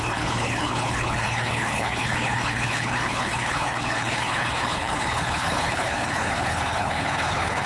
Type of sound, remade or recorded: remade